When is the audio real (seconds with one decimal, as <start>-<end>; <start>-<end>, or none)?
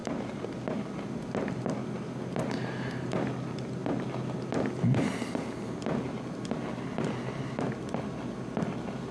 0.0-9.1